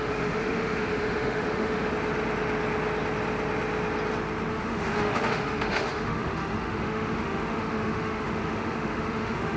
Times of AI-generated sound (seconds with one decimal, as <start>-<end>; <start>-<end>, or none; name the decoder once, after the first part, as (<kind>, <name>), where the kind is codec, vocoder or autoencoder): 0.0-1.9 (autoencoder, DAC-VAE); 4.5-9.6